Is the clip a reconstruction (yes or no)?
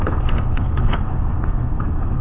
yes